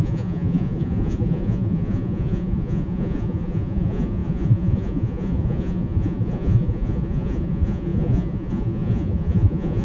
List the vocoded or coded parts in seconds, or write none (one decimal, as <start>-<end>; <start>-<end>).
0.0-9.8